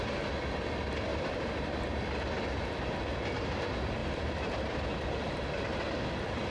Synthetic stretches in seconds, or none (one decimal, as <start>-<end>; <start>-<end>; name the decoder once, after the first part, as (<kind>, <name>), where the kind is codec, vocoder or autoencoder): 1.1-2.1 (vocoder, BigVGAN v2); 4.0-5.0